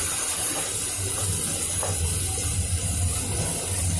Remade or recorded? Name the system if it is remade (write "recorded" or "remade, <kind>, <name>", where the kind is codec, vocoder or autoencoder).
recorded